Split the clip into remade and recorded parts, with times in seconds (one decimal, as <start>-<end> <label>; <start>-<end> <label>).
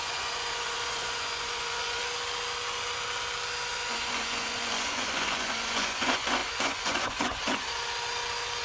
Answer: 0.0-2.0 remade; 2.0-3.7 recorded; 3.7-7.7 remade; 7.7-8.6 recorded